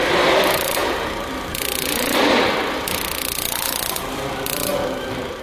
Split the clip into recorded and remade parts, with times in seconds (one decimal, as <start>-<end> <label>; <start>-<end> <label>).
0.0-5.4 recorded